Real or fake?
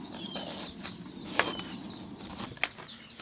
real